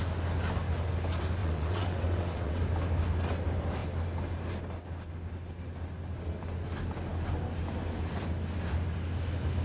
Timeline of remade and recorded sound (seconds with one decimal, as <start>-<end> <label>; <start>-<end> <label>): 0.0-1.4 recorded; 1.4-2.6 remade; 2.6-9.6 recorded